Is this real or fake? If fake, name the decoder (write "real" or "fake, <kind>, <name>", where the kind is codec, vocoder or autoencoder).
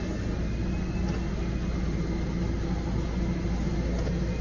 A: real